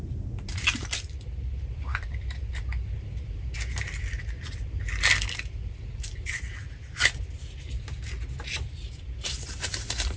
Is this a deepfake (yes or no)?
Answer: no